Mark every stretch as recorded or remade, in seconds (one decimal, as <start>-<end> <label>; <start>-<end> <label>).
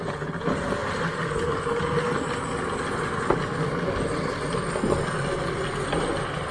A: 0.0-6.5 recorded